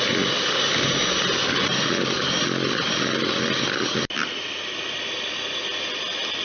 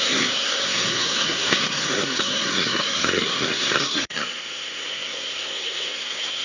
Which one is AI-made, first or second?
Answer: second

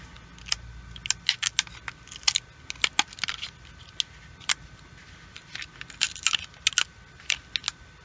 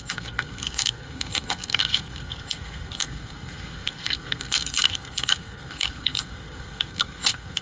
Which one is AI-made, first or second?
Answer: second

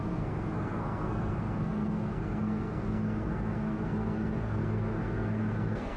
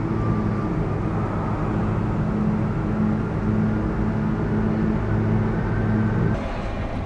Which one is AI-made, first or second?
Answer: first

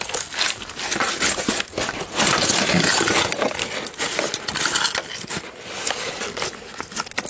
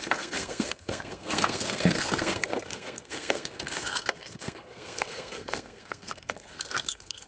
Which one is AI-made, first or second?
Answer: second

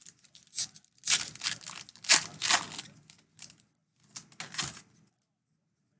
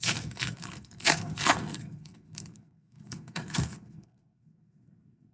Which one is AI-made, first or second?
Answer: second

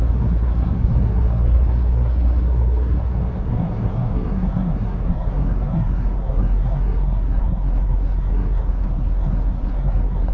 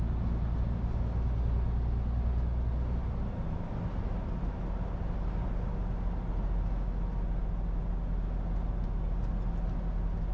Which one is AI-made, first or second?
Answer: first